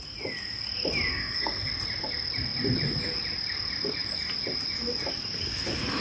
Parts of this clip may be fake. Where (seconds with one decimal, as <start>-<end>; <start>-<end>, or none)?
1.1-1.7